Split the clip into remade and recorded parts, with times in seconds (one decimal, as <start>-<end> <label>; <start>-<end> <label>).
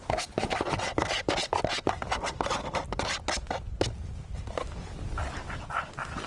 0.0-6.3 recorded